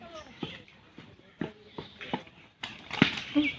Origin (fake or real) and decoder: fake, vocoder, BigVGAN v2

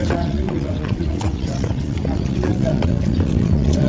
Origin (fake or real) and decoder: fake, vocoder, WaveNeXt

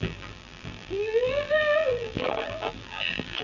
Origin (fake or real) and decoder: fake, vocoder, BigVGAN v2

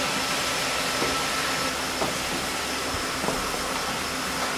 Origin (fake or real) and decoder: real